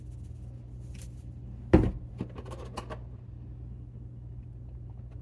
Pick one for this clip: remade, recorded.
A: recorded